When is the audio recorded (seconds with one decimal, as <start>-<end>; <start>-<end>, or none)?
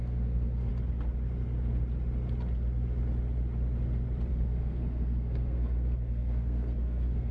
0.7-4.3